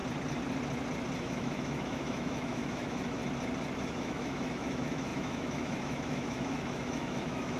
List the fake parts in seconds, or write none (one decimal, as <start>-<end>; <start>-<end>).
1.2-3.2; 3.8-7.6